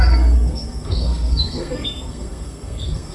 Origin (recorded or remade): remade